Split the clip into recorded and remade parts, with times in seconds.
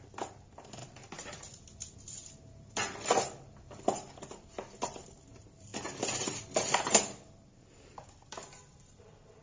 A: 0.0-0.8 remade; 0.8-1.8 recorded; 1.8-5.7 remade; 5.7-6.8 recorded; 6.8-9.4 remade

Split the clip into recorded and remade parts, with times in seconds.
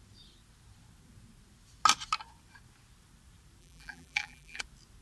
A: 0.0-3.6 recorded; 3.6-4.6 remade; 4.6-5.0 recorded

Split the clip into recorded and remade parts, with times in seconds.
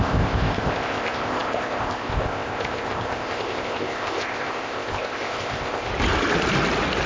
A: 0.0-5.9 remade; 5.9-7.1 recorded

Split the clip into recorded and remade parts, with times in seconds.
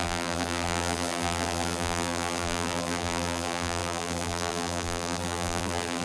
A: 0.0-6.0 remade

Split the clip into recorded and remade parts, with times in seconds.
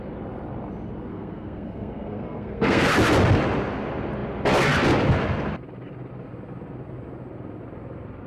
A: 0.0-1.1 recorded; 1.1-2.9 remade; 2.9-8.3 recorded